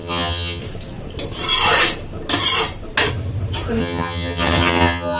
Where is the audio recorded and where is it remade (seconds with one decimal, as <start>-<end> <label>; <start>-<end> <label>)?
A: 0.0-0.6 remade; 0.6-3.8 recorded; 3.8-5.2 remade